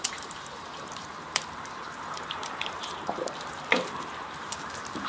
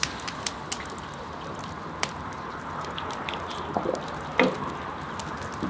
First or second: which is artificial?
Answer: first